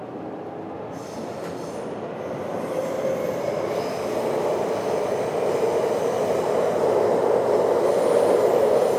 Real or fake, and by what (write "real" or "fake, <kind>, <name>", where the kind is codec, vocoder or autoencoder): real